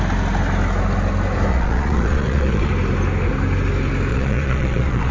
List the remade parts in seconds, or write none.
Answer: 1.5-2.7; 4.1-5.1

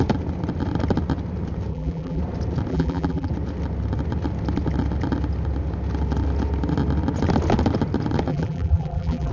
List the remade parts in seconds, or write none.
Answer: 1.7-2.2; 2.7-3.3; 8.3-9.3

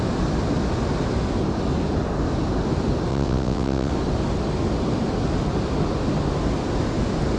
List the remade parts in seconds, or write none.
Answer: 3.1-3.9

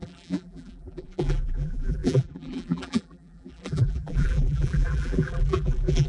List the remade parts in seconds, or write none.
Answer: 0.0-6.1

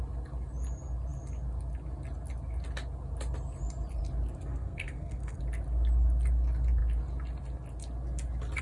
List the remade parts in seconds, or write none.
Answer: 4.5-5.4